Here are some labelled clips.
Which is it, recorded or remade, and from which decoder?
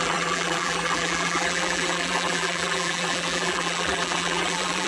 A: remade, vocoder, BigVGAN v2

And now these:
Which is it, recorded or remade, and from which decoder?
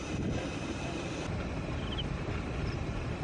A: recorded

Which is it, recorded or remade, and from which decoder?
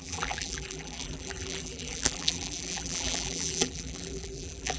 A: remade, vocoder, BigVGAN v2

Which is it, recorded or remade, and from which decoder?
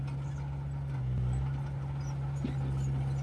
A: recorded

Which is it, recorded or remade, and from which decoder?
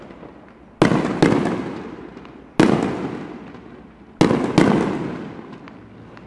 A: recorded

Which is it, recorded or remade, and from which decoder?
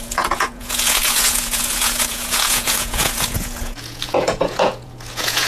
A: remade, vocoder, Vocos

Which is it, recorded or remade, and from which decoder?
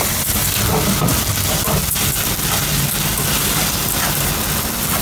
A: recorded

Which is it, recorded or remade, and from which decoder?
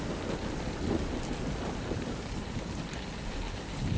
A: recorded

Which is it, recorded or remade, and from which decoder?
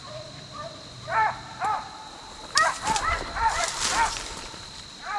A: recorded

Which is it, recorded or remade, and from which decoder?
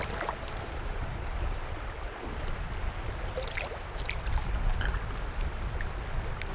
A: recorded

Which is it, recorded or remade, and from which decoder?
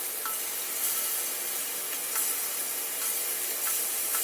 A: recorded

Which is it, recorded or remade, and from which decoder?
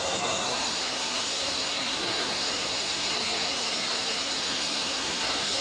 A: remade, codec, SNAC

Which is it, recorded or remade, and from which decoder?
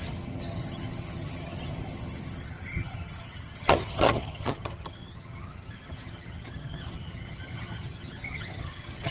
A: remade, vocoder, HiFi-GAN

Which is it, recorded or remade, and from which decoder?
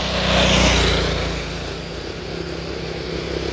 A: recorded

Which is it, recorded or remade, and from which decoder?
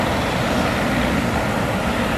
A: recorded